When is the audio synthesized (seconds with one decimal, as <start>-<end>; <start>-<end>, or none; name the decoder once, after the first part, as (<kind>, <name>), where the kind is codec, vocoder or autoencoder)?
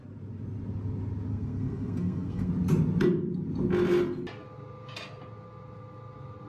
1.3-2.5 (codec, SNAC)